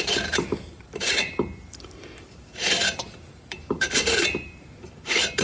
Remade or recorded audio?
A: remade